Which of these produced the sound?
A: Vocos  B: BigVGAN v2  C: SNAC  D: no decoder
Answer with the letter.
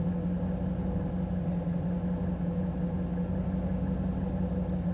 D